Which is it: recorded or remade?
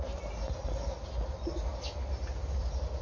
recorded